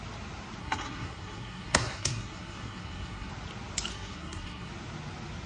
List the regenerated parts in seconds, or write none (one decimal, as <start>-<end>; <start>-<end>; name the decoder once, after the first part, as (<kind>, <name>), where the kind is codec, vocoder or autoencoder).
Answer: 0.6-3.3 (codec, SNAC); 3.9-4.7